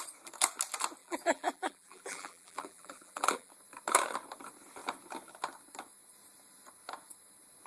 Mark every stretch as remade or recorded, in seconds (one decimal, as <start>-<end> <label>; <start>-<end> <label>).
0.0-1.0 recorded; 1.0-3.5 remade; 3.5-7.7 recorded